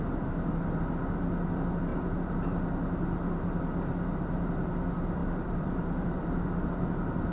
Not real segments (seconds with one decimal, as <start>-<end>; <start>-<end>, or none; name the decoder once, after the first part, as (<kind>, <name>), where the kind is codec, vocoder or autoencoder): 5.2-6.7 (vocoder, BigVGAN v2)